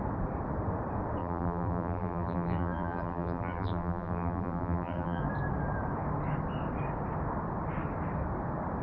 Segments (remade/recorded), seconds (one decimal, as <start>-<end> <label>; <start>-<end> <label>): 0.0-1.2 recorded; 1.2-5.2 remade; 5.2-8.8 recorded